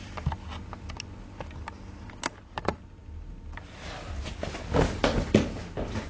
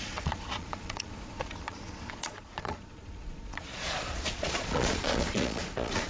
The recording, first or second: first